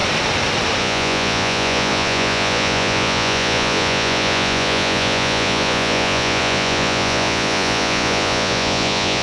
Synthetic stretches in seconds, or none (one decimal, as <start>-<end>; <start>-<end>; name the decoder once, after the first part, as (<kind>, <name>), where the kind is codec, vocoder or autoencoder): 0.8-9.2 (vocoder, Vocos)